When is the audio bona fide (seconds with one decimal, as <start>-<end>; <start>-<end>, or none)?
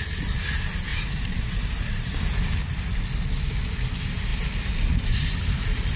0.0-0.9; 2.4-6.0